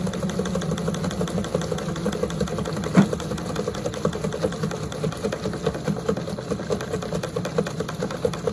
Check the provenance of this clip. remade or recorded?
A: recorded